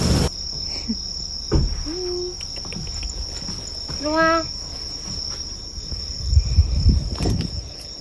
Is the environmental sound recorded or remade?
recorded